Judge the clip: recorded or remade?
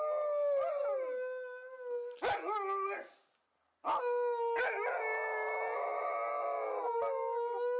recorded